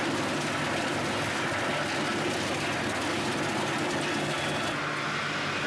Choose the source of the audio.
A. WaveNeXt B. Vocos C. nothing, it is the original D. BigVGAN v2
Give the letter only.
C